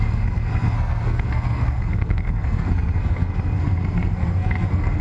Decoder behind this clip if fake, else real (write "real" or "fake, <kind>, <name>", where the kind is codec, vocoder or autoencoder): fake, codec, SNAC